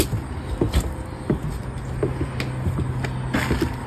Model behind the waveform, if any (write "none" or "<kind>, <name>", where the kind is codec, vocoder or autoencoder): none